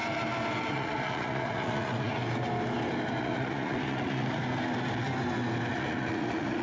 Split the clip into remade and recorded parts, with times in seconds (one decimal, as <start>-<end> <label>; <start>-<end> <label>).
0.0-0.7 recorded; 0.7-2.2 remade; 2.2-3.2 recorded; 3.2-4.4 remade; 4.4-5.7 recorded; 5.7-6.6 remade